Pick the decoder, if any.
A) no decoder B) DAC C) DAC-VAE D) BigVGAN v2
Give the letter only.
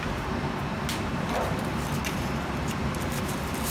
A